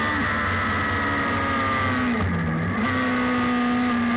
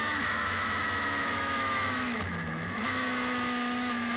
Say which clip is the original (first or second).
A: first